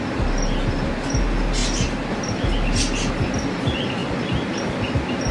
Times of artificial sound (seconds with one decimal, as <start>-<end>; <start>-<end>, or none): none